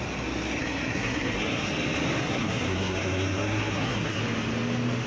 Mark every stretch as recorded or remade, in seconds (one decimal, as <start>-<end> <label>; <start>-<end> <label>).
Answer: 0.0-0.6 recorded; 0.6-1.7 remade; 1.7-2.2 recorded; 2.2-4.2 remade; 4.2-5.1 recorded